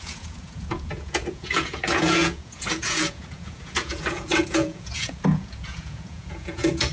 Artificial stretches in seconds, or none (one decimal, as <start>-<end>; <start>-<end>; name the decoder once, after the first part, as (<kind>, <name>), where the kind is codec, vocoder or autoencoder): 0.0-6.9 (vocoder, Vocos)